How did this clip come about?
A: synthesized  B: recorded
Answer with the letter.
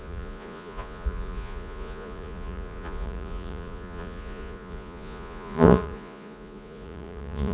A